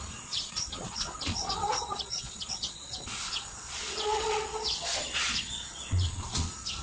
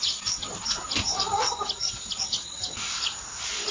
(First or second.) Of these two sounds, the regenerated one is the first